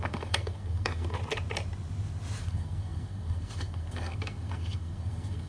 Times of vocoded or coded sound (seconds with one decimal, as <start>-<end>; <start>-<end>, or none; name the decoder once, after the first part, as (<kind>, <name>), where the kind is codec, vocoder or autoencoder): 0.0-1.2 (codec, SNAC); 2.4-5.5